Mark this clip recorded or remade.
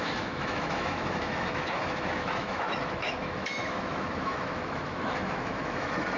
remade